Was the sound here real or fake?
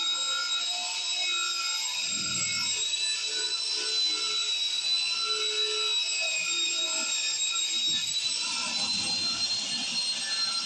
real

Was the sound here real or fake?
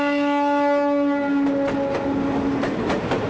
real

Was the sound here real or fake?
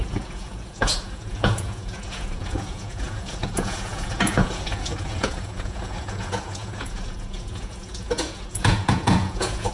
fake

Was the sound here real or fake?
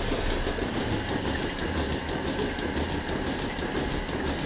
real